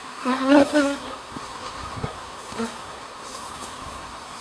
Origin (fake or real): fake